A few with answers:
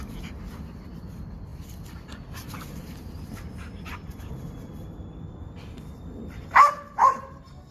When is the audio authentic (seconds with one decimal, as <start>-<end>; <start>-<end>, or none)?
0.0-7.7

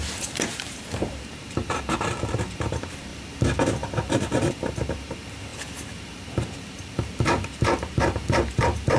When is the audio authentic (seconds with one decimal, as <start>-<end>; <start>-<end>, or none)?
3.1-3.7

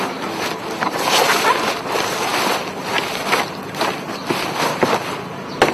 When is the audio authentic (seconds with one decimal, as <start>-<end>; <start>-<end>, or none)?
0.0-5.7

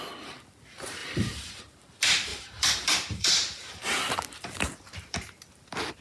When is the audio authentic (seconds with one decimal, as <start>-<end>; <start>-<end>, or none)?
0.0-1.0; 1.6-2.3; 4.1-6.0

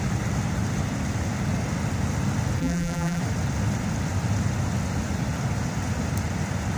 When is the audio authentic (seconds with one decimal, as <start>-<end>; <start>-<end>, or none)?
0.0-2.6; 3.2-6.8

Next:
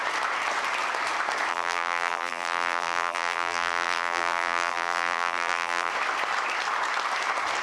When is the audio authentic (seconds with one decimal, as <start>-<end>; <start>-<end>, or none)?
0.0-1.5; 5.9-7.6

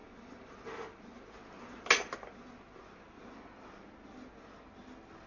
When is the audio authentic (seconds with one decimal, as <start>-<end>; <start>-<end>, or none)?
0.0-5.3

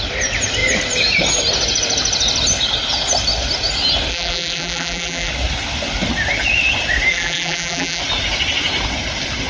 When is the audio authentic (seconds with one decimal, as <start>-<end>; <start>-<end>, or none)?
0.0-4.1; 5.3-7.1; 8.0-9.5